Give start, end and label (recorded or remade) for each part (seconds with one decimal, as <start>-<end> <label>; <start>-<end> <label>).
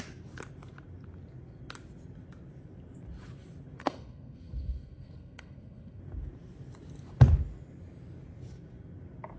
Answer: 0.0-3.8 recorded; 3.8-6.0 remade; 6.0-9.4 recorded